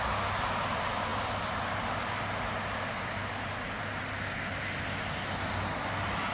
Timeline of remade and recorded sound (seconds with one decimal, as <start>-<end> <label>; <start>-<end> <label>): 0.0-6.3 recorded